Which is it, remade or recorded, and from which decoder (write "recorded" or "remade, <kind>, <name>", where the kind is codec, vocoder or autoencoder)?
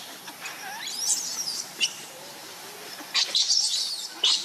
remade, vocoder, BigVGAN v2